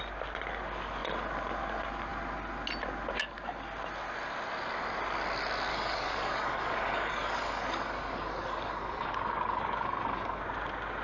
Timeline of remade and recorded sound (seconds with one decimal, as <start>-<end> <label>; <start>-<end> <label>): 0.0-5.7 recorded; 5.7-10.4 remade; 10.4-11.0 recorded